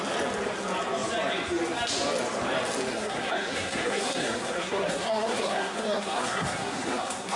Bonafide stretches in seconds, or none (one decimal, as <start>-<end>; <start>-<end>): 0.0-2.9

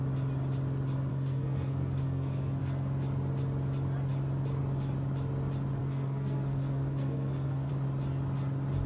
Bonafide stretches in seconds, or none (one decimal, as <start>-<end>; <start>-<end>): 0.0-1.1; 2.6-5.8; 7.7-8.9

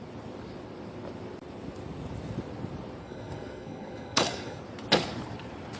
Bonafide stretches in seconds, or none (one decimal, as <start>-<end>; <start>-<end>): 0.0-3.0; 4.6-5.8

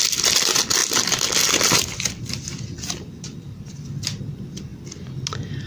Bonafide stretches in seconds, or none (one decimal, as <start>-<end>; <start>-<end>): 0.0-5.7